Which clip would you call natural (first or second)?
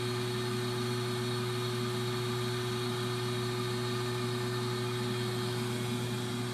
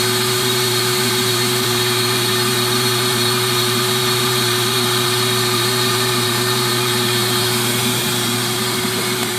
first